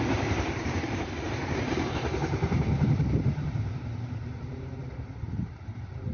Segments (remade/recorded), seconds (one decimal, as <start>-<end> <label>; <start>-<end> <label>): 0.0-4.8 remade; 4.8-5.3 recorded; 5.3-6.1 remade